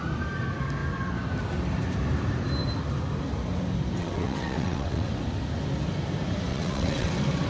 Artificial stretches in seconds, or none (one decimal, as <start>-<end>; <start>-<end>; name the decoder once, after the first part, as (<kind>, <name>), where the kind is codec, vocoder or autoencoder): 4.0-5.1 (vocoder, WaveNeXt); 6.5-7.1